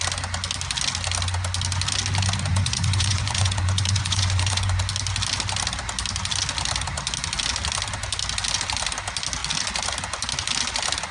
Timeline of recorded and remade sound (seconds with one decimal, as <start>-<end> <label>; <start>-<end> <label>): 0.0-2.5 recorded; 2.5-4.8 remade; 4.8-11.1 recorded